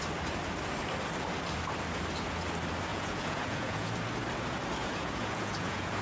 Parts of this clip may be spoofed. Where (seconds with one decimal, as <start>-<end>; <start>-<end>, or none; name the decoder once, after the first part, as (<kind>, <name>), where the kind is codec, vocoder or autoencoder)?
2.9-3.9 (vocoder, Vocos); 4.8-6.0